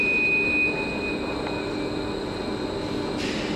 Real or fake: real